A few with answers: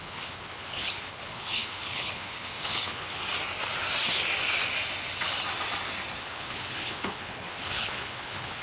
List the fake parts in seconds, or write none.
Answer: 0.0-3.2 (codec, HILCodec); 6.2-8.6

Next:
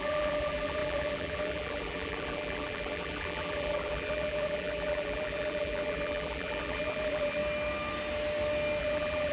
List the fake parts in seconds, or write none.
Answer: 0.0-7.4 (vocoder, BigVGAN v2); 8.8-9.3

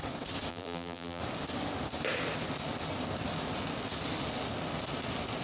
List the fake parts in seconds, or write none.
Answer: 0.5-1.2 (vocoder, BigVGAN v2)

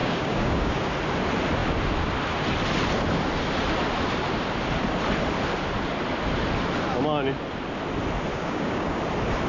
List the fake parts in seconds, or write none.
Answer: 0.0-0.8 (codec, DAC); 8.3-9.0

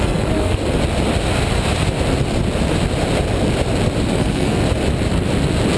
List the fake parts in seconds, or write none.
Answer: 0.0-0.6 (codec, SNAC); 4.1-4.6

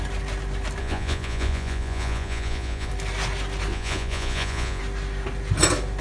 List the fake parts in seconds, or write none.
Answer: 0.8-2.9 (vocoder, Vocos); 3.7-4.8

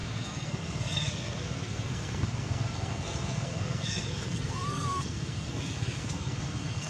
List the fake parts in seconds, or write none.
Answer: 0.0-6.9 (codec, SNAC)